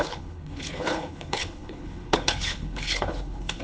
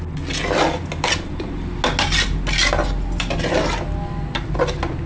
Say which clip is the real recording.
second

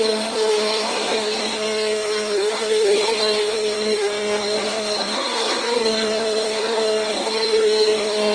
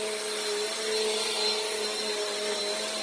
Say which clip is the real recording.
second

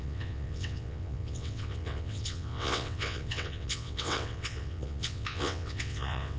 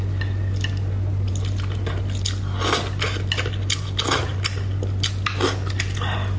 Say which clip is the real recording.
second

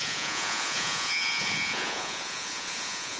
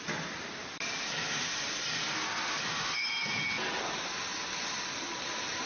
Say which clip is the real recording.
second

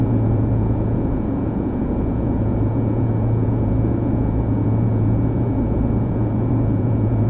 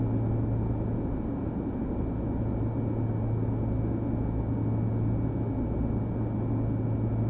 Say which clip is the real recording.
second